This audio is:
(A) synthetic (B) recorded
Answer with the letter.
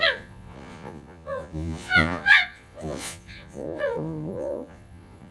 A